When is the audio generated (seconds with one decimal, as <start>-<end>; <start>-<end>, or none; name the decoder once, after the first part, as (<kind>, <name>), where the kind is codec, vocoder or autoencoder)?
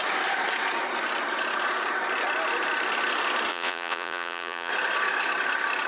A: 3.5-4.7 (vocoder, Vocos)